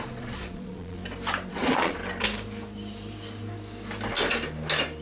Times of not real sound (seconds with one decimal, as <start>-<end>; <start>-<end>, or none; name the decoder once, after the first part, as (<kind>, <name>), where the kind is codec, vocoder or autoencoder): 0.0-1.0 (vocoder, Vocos); 1.5-2.0